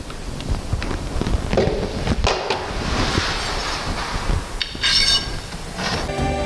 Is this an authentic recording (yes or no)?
yes